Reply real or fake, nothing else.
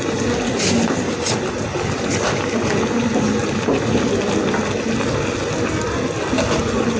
real